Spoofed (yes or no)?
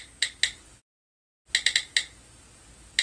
no